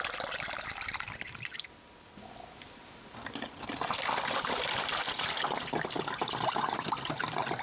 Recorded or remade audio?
recorded